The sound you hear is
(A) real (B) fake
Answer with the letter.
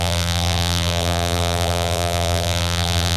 B